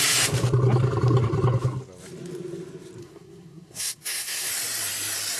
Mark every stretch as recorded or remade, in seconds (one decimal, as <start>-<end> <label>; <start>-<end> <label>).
0.0-3.0 recorded; 3.0-4.5 remade; 4.5-5.4 recorded